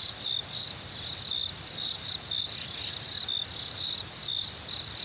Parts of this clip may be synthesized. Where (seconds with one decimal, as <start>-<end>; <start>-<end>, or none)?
none